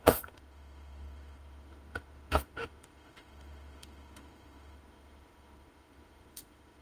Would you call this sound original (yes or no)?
no